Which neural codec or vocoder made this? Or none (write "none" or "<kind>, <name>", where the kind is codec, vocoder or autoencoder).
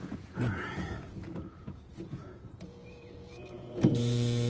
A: vocoder, Vocos